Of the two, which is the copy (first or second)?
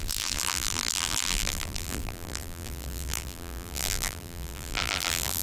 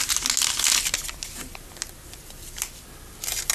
first